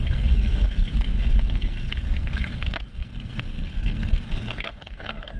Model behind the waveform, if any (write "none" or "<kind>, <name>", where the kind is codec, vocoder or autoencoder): codec, SNAC